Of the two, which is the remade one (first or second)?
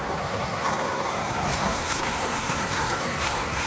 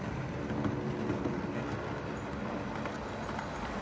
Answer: first